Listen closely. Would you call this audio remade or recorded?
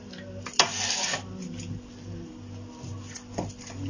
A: recorded